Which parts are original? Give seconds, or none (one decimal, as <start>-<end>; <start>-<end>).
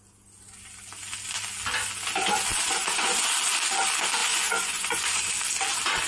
0.0-2.5; 3.1-4.2; 5.3-6.1